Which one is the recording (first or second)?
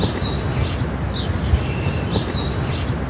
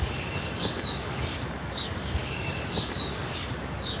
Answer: first